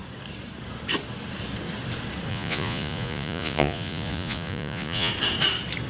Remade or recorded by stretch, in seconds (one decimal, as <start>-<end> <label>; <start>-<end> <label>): 0.0-2.3 recorded; 2.3-5.1 remade; 5.1-5.9 recorded